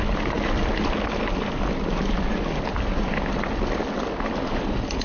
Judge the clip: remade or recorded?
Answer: recorded